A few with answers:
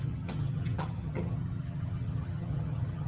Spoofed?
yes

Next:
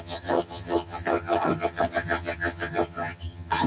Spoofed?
yes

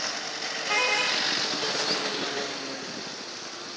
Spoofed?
no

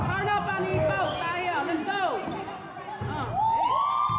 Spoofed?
no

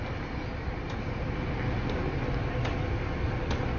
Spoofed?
no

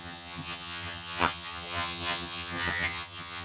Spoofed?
yes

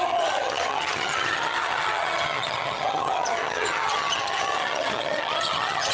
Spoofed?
yes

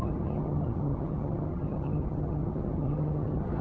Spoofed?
yes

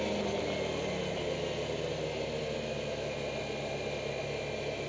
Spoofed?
no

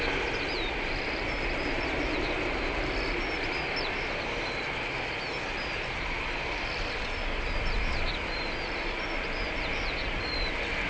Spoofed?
no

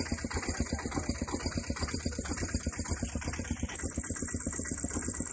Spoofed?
no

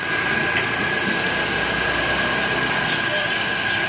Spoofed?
no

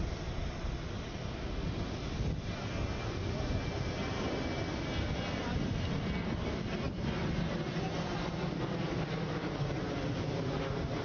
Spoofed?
no